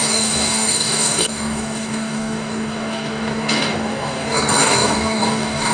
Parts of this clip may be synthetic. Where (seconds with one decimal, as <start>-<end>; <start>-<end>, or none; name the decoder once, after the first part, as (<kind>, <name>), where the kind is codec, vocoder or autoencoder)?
0.0-5.7 (codec, DAC)